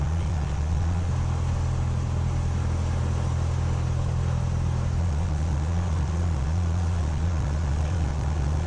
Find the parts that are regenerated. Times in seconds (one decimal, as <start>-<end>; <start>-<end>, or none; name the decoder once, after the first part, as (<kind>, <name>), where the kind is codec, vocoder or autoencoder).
0.0-1.1 (vocoder, Vocos); 5.0-8.7